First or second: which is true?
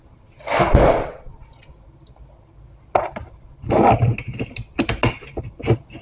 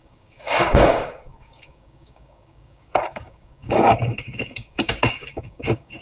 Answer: first